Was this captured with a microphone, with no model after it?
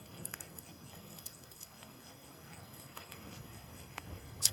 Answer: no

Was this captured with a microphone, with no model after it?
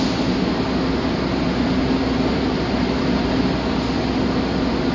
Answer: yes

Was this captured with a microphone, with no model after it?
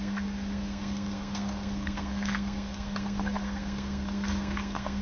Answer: no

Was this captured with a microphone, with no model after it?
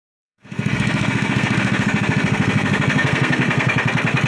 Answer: no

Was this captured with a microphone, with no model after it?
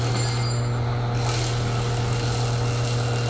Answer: yes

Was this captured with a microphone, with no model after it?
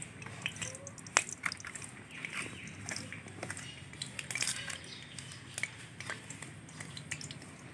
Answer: yes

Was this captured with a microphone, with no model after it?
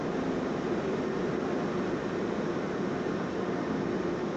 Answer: yes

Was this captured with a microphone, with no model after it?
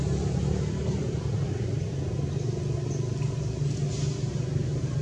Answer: yes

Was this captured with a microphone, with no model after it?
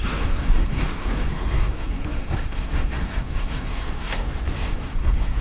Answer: no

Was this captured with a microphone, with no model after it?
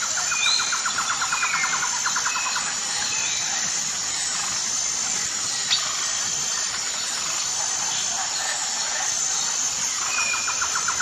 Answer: yes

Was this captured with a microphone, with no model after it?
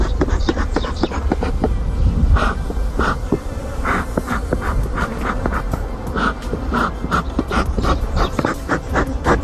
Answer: yes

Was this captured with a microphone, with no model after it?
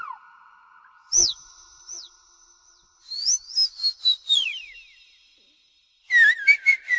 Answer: yes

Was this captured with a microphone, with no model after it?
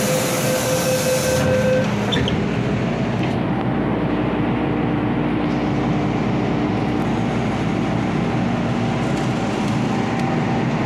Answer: yes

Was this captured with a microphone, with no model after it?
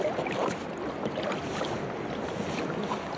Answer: yes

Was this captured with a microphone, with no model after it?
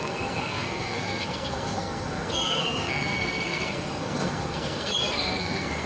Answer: no